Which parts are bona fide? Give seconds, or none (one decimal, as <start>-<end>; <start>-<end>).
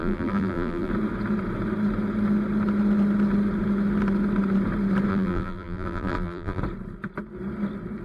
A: 0.9-5.1; 6.6-8.0